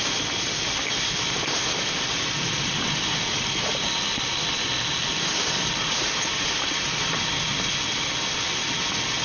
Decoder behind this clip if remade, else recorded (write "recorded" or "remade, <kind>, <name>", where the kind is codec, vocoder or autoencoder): recorded